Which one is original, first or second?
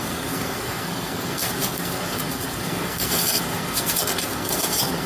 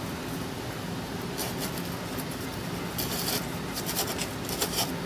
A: second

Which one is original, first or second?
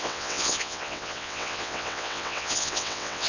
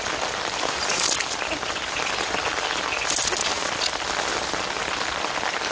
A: second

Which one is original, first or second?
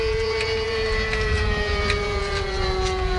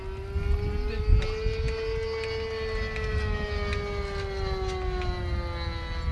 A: second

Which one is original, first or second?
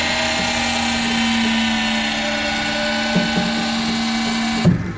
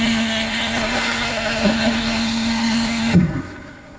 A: first